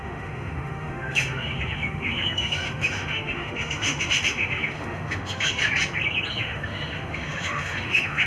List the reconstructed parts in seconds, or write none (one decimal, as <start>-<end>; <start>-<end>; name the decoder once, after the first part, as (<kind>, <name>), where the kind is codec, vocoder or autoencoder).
0.0-5.6 (autoencoder, DAC-VAE); 6.3-8.3